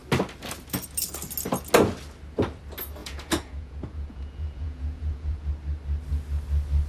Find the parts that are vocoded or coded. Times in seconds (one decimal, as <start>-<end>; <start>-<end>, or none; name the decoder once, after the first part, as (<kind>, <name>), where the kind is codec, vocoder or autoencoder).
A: 3.0-5.5 (vocoder, Vocos)